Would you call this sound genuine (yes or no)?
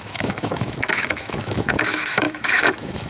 no